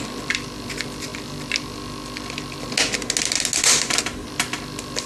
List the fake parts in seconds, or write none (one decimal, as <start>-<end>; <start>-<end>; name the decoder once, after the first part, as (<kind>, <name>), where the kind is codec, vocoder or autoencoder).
none

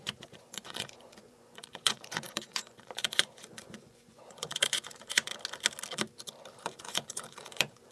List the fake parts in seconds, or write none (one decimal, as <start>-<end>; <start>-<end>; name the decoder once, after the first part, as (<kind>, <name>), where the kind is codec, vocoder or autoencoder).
0.0-5.3 (vocoder, Vocos); 6.6-7.9

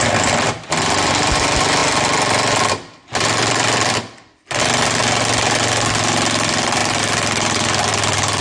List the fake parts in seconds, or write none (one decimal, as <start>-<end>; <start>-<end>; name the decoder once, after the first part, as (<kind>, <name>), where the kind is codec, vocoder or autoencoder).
none